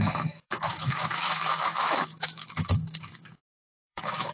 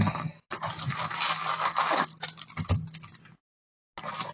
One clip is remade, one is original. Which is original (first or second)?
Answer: second